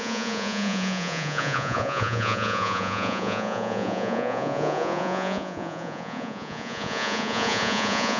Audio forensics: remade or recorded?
remade